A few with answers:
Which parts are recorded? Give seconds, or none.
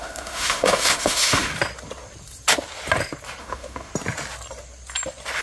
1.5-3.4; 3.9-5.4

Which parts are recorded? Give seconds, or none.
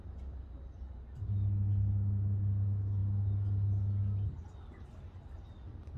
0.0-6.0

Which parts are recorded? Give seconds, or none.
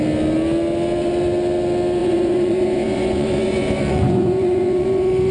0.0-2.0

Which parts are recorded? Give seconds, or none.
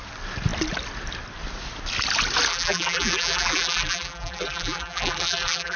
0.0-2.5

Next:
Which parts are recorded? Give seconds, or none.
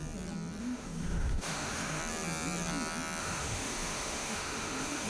0.0-0.6; 2.0-3.2